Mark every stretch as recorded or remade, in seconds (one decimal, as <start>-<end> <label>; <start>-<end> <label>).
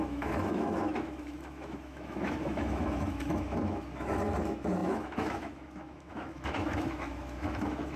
0.0-8.0 remade